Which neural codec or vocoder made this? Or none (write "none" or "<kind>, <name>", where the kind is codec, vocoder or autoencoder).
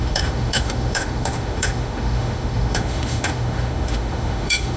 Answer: autoencoder, DAC-VAE